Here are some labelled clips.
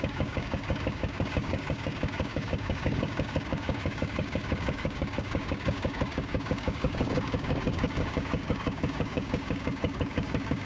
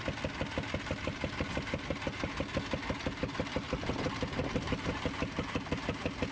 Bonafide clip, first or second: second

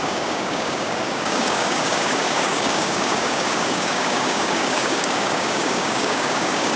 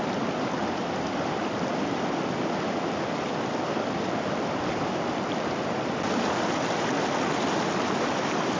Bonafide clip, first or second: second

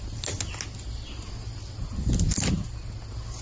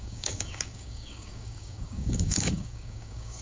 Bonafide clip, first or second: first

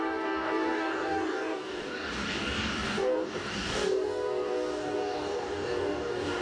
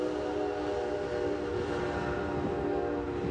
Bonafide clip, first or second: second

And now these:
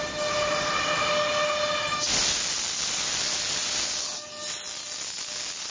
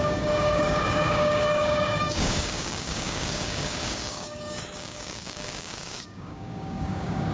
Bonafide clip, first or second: first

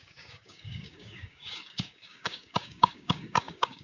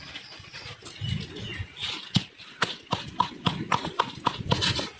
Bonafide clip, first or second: second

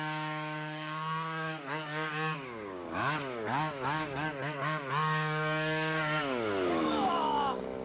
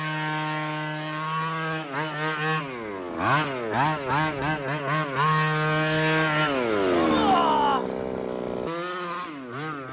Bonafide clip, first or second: second